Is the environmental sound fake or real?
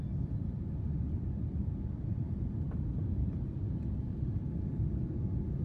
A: fake